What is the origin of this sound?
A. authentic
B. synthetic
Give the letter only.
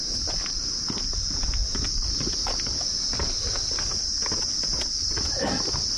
A